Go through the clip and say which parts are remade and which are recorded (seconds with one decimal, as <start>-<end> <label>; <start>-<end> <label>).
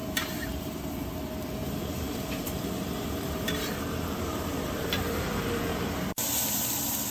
0.0-1.1 remade; 1.1-1.6 recorded; 1.6-5.9 remade; 5.9-7.1 recorded